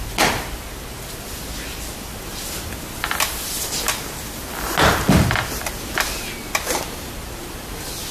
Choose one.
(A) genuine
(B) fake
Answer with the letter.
A